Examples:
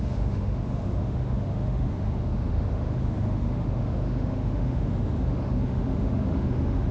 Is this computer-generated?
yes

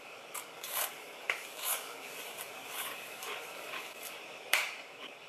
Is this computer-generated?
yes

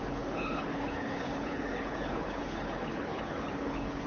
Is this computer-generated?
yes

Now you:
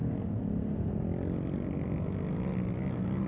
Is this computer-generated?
no